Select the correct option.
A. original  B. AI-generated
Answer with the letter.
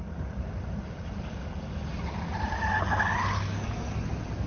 A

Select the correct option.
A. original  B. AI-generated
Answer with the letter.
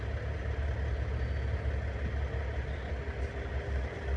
A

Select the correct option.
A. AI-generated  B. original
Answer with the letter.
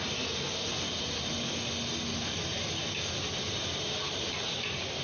B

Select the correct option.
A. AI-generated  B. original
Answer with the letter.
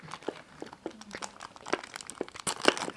B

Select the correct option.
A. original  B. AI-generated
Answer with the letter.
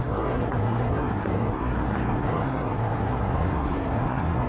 B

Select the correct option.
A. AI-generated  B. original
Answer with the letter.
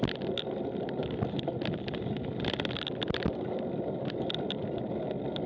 B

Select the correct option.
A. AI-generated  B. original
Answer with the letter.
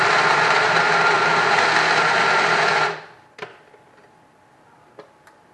B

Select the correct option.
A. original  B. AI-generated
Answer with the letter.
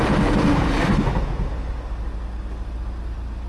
A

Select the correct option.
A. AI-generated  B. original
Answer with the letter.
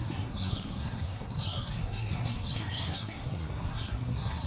A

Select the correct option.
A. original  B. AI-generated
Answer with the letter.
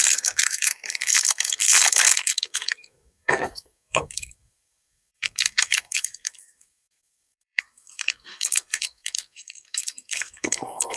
B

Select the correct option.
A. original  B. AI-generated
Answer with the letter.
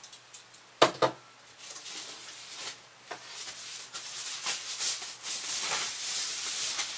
A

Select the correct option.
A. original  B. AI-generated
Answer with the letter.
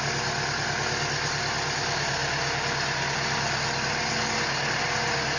A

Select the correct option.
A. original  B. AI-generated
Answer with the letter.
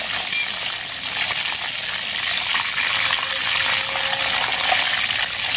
A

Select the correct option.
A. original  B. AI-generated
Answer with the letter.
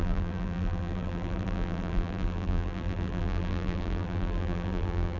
B